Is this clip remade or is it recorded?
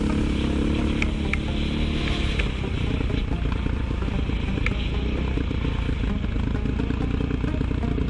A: recorded